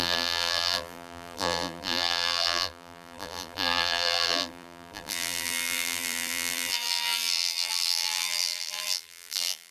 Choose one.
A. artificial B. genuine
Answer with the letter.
A